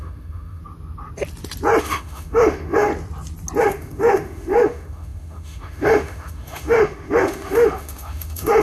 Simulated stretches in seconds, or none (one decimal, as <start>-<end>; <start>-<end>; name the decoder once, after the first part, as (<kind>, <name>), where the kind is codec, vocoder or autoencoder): 0.0-0.6 (autoencoder, DAC-VAE); 1.8-2.9; 3.6-8.6